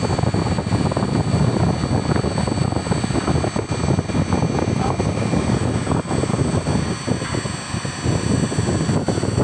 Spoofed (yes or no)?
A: no